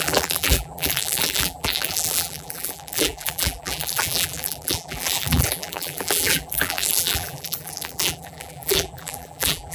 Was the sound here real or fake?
fake